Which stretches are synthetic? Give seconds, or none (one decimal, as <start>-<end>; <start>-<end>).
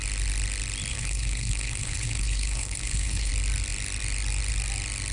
0.9-3.3